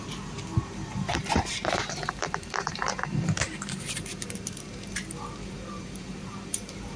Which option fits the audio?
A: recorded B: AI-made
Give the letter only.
B